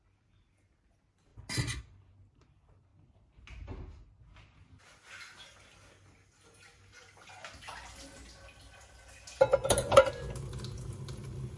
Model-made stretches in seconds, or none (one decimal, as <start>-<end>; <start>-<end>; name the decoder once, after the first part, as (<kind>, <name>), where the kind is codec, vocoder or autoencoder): none